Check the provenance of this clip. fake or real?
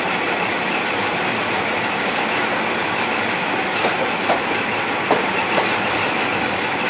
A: real